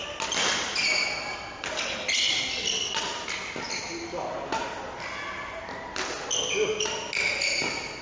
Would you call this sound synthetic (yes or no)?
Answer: no